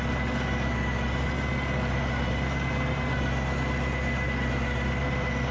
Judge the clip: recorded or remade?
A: recorded